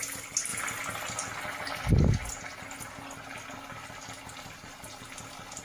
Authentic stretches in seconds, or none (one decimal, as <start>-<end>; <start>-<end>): 0.0-5.6